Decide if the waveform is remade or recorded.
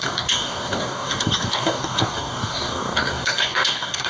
remade